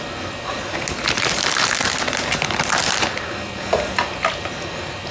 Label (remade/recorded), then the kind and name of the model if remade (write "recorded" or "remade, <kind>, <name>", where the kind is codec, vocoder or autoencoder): recorded